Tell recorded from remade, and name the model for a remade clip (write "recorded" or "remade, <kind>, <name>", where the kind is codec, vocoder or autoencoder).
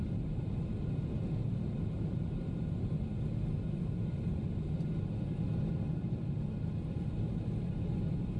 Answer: recorded